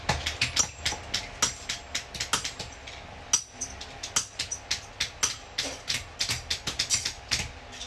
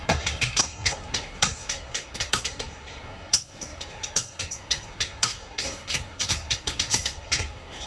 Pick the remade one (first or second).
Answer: second